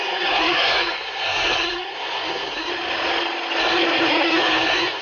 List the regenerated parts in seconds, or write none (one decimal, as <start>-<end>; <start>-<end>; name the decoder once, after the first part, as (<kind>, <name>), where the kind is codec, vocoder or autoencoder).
0.0-2.7 (codec, SNAC); 3.6-5.0